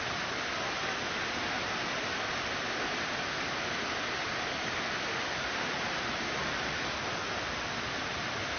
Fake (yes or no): no